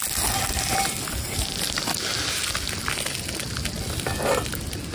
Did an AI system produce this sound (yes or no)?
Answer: no